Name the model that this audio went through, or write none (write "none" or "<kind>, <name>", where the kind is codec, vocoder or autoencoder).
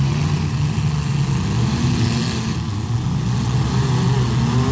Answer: none